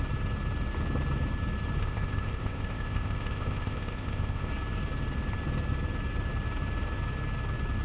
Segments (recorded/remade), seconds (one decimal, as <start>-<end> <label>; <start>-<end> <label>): 0.0-1.8 recorded; 1.8-4.5 remade; 4.5-7.8 recorded